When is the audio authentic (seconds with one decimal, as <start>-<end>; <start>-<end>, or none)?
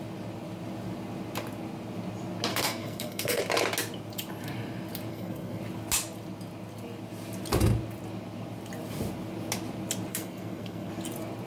0.0-2.5; 3.4-5.1; 5.6-10.1; 10.9-11.5